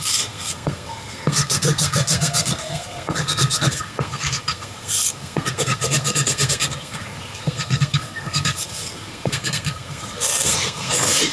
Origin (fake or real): fake